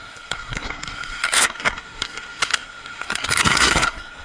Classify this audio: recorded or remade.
remade